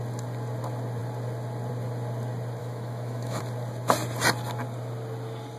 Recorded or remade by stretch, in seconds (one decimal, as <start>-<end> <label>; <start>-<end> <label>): 0.0-2.6 recorded; 2.6-3.4 remade; 3.4-5.6 recorded